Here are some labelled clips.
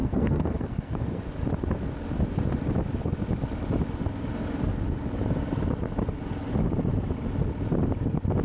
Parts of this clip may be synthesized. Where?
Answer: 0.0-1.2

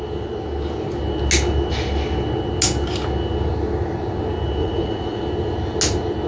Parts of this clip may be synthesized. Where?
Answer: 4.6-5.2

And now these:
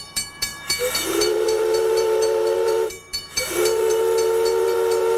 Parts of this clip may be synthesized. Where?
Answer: 0.0-5.2